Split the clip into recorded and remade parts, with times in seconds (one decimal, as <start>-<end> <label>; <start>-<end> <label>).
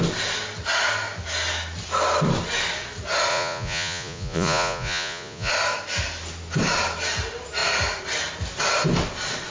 0.0-3.3 recorded; 3.3-5.5 remade; 5.5-9.5 recorded